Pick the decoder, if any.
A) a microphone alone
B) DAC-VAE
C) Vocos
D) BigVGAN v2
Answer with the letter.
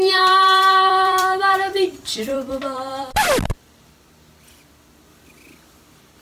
D